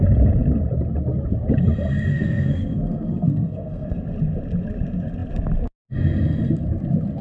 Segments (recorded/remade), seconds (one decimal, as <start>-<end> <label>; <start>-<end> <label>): 0.0-2.1 recorded; 2.1-4.0 remade; 4.0-7.2 recorded